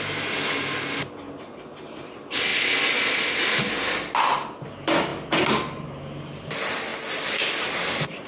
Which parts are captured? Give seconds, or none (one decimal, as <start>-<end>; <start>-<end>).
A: 0.0-8.3